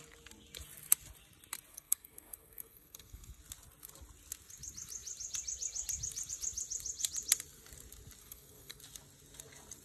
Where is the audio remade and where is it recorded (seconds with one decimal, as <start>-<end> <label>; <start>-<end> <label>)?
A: 0.0-1.7 recorded; 1.7-3.4 remade; 3.4-8.2 recorded; 8.2-8.8 remade; 8.8-9.8 recorded

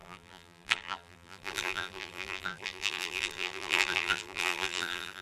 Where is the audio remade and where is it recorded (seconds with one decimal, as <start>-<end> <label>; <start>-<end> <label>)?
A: 0.0-5.2 remade

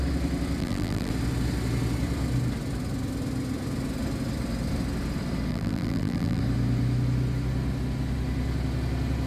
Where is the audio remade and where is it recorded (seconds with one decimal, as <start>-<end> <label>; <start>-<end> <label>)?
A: 0.0-0.6 recorded; 0.6-1.1 remade; 1.1-5.5 recorded; 5.5-6.4 remade; 6.4-9.3 recorded

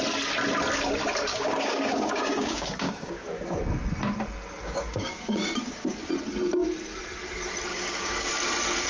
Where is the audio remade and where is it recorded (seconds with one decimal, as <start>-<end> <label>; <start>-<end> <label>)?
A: 0.0-1.3 recorded; 1.3-3.6 remade; 3.6-4.6 recorded; 4.6-6.1 remade; 6.1-7.7 recorded; 7.7-8.3 remade; 8.3-8.9 recorded

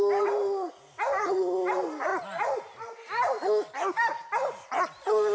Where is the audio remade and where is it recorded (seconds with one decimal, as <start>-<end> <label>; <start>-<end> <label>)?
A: 0.0-5.3 recorded

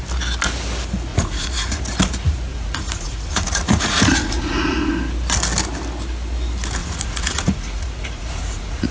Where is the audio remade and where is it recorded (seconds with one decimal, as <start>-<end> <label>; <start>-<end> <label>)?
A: 0.0-1.1 recorded; 1.1-1.8 remade; 1.8-2.5 recorded; 2.5-4.9 remade; 4.9-6.8 recorded; 6.8-8.9 remade

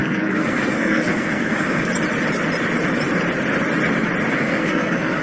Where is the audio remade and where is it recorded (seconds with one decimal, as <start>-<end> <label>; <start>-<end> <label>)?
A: 0.0-1.9 remade; 1.9-4.3 recorded; 4.3-5.2 remade

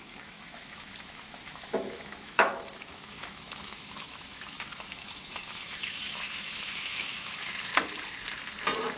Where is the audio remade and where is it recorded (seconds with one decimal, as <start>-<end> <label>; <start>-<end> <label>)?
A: 0.0-7.7 remade; 7.7-9.0 recorded